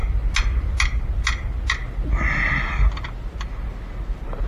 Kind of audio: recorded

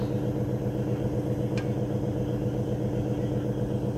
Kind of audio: recorded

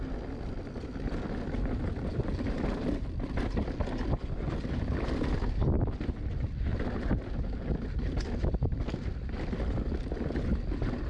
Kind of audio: recorded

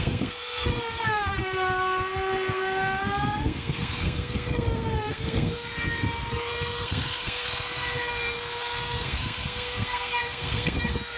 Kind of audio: remade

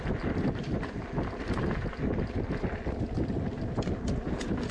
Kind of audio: recorded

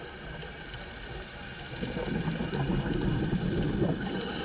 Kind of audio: recorded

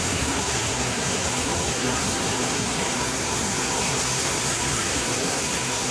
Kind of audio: remade